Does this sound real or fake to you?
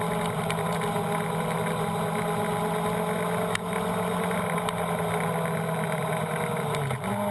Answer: real